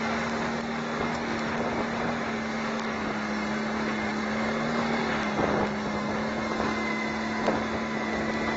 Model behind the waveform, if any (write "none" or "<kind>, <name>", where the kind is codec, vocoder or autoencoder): none